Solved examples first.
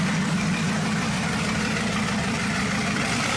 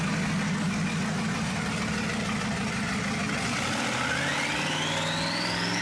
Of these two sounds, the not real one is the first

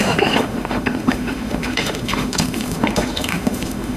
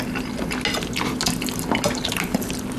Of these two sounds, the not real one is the first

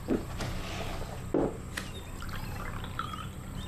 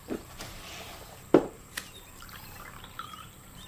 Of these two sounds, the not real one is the second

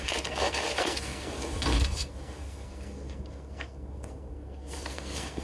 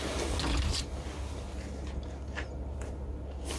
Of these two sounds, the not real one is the first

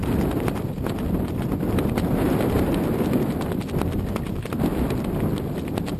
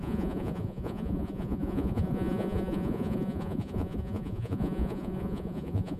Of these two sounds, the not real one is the second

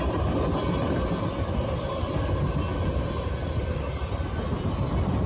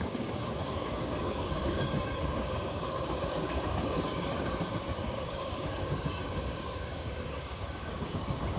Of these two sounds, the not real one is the second